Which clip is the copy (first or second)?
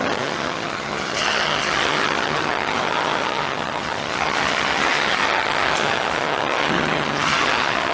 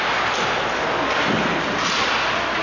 first